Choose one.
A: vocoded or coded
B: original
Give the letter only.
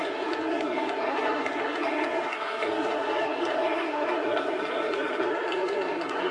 A